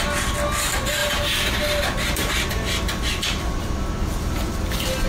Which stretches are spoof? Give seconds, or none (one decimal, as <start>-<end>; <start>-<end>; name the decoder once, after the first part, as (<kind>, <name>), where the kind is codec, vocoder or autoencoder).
1.0-2.4 (vocoder, BigVGAN v2)